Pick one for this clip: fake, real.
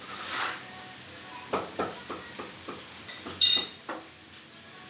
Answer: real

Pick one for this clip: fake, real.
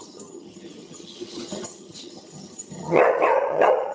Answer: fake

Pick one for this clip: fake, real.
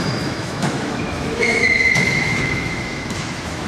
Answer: fake